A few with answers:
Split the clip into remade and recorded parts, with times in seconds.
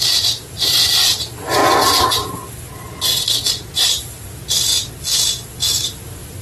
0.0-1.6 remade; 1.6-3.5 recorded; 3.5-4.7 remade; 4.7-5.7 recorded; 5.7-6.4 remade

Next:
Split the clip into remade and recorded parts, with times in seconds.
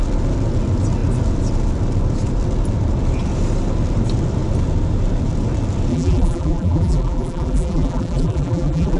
0.0-5.9 recorded; 5.9-9.0 remade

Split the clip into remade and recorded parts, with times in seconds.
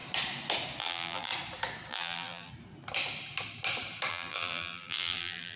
0.0-0.8 recorded; 0.8-1.3 remade; 1.3-1.9 recorded; 1.9-2.5 remade; 2.5-4.1 recorded; 4.1-5.6 remade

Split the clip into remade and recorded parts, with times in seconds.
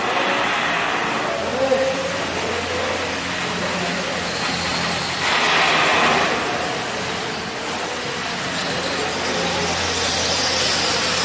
0.0-1.5 recorded; 1.5-2.2 remade; 2.2-4.7 recorded; 4.7-5.3 remade; 5.3-11.2 recorded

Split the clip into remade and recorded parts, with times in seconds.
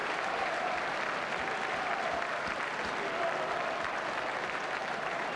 0.0-0.9 remade; 0.9-4.8 recorded; 4.8-5.4 remade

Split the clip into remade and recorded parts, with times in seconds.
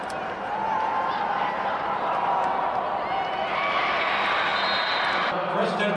0.0-6.0 recorded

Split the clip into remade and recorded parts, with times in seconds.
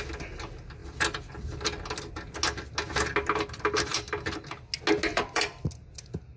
0.0-5.1 recorded; 5.1-5.6 remade; 5.6-6.4 recorded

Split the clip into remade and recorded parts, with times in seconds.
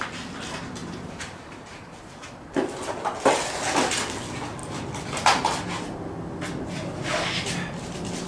0.0-0.8 recorded; 0.8-2.7 remade; 2.7-8.3 recorded